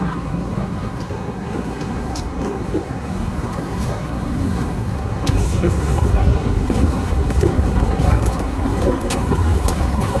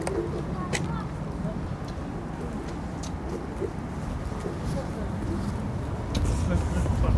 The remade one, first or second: first